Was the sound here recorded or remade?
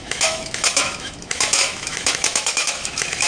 remade